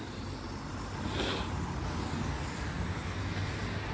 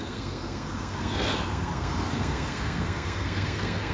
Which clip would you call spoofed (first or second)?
second